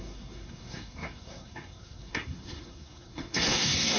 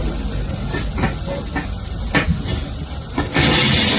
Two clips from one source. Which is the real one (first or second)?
second